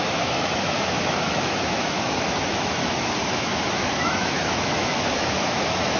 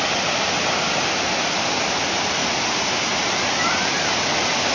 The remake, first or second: first